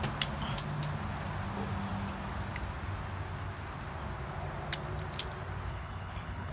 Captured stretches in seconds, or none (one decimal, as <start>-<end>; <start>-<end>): 0.0-5.7